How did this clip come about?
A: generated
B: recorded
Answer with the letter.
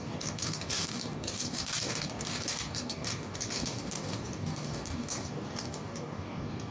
A